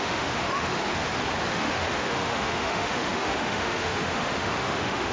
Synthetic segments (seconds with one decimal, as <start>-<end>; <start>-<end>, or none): 0.0-0.9; 1.5-5.1